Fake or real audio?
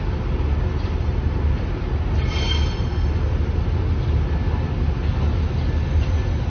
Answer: real